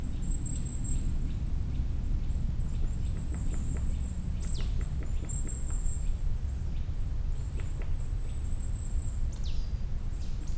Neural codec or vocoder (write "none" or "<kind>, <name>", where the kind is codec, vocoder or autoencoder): none